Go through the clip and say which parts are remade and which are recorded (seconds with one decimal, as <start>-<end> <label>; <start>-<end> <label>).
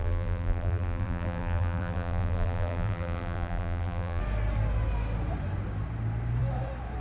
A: 0.0-4.2 remade; 4.2-7.0 recorded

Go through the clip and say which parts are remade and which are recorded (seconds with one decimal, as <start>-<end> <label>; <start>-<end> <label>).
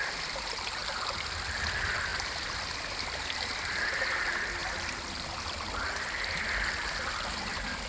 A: 0.0-2.1 recorded; 2.1-3.8 remade; 3.8-7.9 recorded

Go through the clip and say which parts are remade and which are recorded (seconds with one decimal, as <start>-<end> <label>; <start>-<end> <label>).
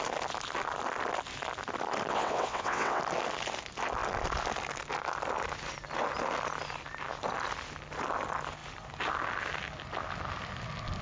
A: 0.0-2.1 recorded; 2.1-3.0 remade; 3.0-11.0 recorded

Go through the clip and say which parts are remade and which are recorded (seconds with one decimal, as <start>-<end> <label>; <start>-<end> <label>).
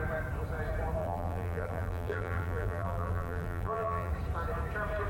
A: 0.0-1.0 recorded; 1.0-4.1 remade; 4.1-5.1 recorded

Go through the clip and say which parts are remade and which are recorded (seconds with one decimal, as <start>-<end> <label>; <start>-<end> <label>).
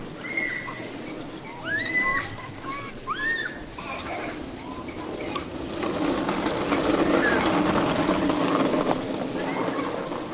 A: 0.0-10.3 recorded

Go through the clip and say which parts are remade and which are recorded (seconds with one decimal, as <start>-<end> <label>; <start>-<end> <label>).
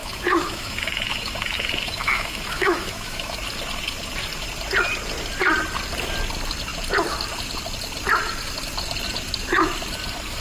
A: 0.0-3.4 remade; 3.4-10.4 recorded